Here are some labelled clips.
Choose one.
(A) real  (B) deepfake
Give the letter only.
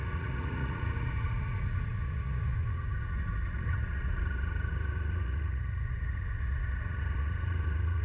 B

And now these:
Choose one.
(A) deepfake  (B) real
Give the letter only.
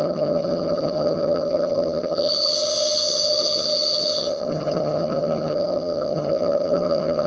A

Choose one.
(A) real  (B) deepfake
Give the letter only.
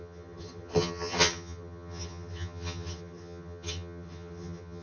B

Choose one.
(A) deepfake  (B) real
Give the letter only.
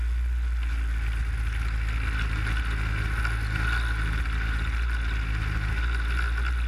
B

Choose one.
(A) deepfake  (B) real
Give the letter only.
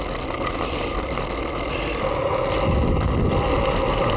B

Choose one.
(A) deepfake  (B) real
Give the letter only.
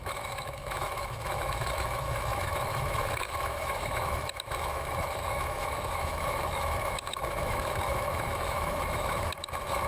A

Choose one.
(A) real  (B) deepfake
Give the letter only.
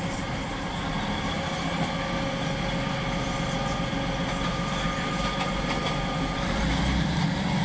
A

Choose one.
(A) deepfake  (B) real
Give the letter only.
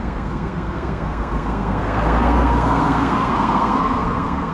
A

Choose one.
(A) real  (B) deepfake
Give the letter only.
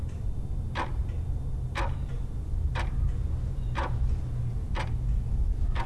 A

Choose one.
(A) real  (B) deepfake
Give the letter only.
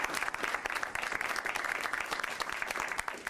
A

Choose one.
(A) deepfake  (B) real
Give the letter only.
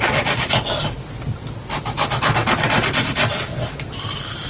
B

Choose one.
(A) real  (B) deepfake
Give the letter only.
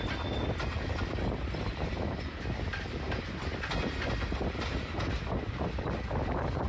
A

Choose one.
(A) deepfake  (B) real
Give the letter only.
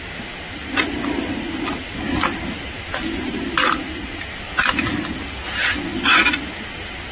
A